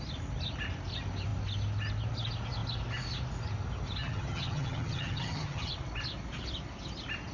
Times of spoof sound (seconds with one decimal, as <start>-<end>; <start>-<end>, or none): 4.0-5.7